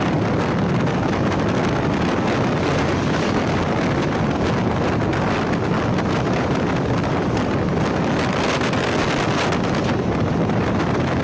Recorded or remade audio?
recorded